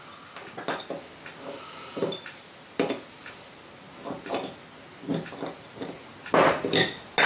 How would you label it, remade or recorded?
recorded